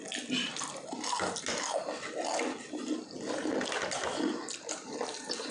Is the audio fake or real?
real